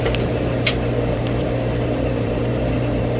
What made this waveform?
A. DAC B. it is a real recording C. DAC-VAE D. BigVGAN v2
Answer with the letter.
D